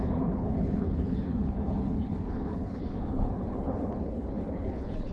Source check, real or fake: fake